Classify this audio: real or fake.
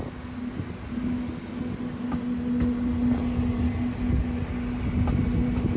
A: real